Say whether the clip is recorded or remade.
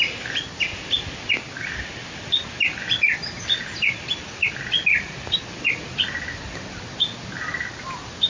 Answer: recorded